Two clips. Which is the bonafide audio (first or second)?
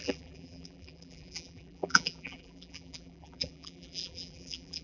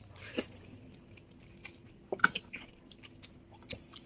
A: second